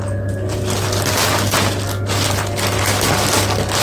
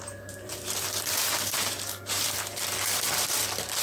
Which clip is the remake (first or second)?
second